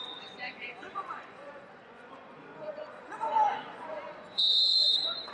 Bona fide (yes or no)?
no